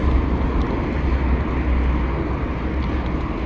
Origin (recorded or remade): recorded